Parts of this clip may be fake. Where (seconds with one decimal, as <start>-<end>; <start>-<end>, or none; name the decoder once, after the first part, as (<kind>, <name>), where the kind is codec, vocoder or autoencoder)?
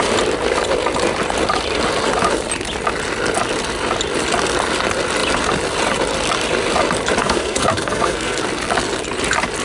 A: 7.2-8.4 (codec, SNAC)